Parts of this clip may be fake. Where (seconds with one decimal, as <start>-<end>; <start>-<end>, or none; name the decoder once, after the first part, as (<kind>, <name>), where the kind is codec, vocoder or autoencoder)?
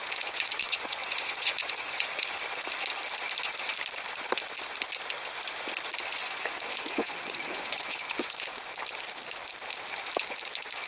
0.0-2.4 (vocoder, Vocos); 6.1-8.5